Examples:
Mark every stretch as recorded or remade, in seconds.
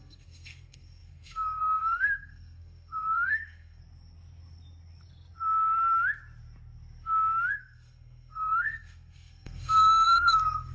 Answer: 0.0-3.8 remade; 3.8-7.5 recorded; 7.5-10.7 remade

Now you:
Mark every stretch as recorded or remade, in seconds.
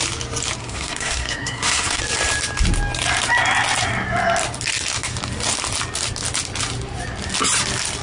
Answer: 0.0-0.6 recorded; 0.6-2.0 remade; 2.0-8.0 recorded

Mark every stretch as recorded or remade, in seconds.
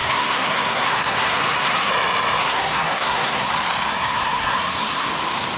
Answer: 0.0-1.9 remade; 1.9-2.4 recorded; 2.4-3.5 remade; 3.5-3.9 recorded; 3.9-5.1 remade; 5.1-5.6 recorded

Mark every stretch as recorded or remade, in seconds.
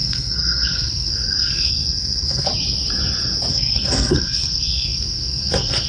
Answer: 0.0-2.5 remade; 2.5-3.5 recorded; 3.5-5.9 remade